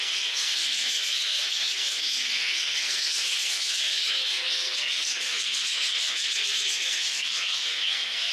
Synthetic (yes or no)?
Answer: yes